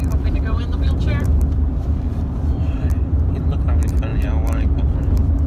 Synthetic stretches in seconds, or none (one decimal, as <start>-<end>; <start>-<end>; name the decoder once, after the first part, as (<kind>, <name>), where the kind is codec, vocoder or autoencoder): 1.3-3.3 (vocoder, BigVGAN v2)